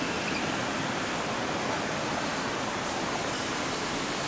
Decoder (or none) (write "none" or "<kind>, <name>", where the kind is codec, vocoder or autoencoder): none